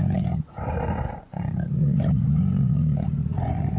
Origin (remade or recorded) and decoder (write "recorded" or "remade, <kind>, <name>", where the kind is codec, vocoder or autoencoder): remade, vocoder, Vocos